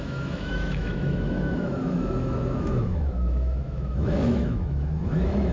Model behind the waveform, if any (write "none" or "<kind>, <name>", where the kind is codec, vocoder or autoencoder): autoencoder, DAC-VAE